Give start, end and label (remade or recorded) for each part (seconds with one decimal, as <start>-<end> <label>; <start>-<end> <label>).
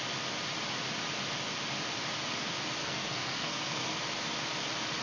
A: 0.0-2.8 recorded; 2.8-4.0 remade; 4.0-5.0 recorded